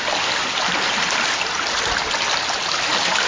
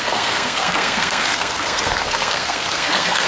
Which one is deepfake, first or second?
second